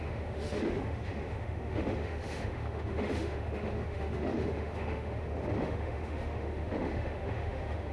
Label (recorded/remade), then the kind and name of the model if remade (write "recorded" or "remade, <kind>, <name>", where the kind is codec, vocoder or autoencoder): remade, autoencoder, DAC-VAE